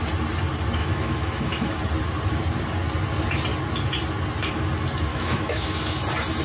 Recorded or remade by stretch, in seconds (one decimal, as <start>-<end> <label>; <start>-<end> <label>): 0.0-0.8 recorded; 0.8-1.8 remade; 1.8-5.1 recorded; 5.1-6.0 remade; 6.0-6.4 recorded